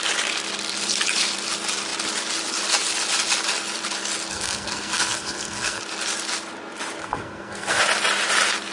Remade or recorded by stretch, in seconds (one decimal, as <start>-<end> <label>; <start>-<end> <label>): 0.0-4.3 recorded; 4.3-5.8 remade; 5.8-7.0 recorded; 7.0-7.8 remade; 7.8-8.7 recorded